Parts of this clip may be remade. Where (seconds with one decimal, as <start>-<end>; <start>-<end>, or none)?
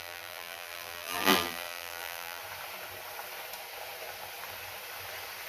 0.0-2.4